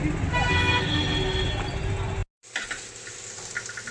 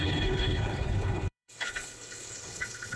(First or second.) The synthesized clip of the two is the second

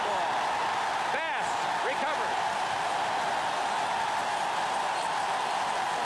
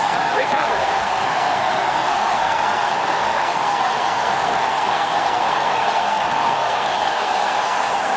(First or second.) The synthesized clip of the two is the second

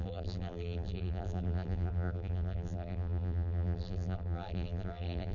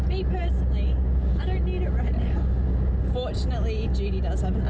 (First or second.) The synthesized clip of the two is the first